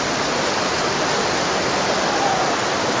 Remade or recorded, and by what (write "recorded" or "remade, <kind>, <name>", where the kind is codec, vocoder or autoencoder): recorded